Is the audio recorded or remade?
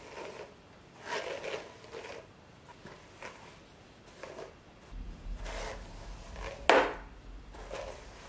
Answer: recorded